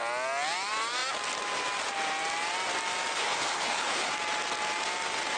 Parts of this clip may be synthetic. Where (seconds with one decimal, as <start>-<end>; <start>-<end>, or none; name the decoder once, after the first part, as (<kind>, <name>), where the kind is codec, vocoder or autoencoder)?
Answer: 3.2-4.1 (codec, HILCodec)